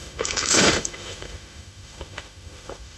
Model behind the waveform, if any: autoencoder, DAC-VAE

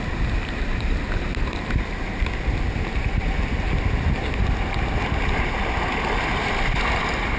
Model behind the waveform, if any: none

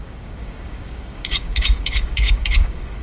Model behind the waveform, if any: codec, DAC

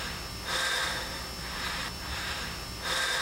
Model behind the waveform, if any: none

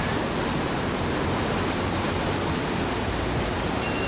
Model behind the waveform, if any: vocoder, BigVGAN v2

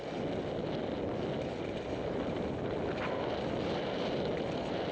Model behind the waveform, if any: none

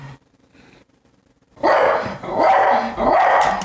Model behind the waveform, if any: vocoder, BigVGAN v2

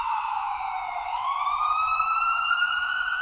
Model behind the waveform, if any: autoencoder, DAC-VAE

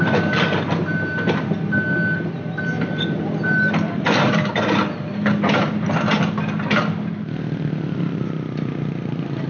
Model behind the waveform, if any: none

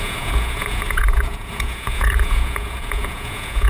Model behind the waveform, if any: vocoder, Vocos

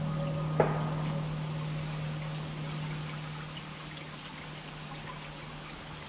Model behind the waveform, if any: none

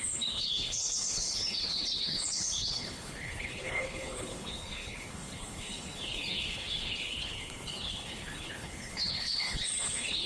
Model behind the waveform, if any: codec, HILCodec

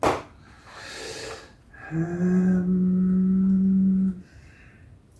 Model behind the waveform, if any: none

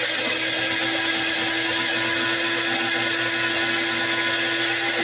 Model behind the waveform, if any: none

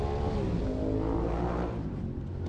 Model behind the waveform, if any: none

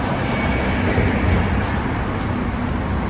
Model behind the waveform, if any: none